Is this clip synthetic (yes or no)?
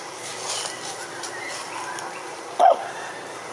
no